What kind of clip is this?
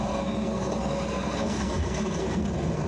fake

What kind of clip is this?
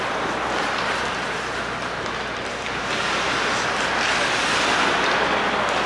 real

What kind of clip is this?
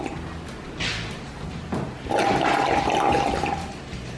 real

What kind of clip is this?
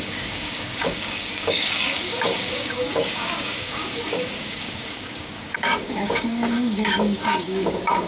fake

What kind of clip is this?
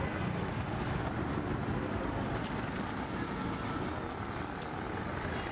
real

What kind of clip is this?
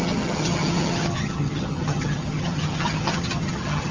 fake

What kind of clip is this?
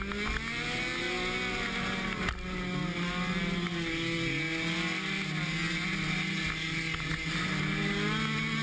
real